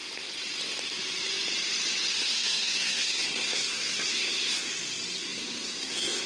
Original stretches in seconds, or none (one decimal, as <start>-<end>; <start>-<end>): 0.0-2.1; 4.7-5.2